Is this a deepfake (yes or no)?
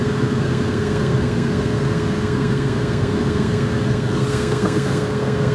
yes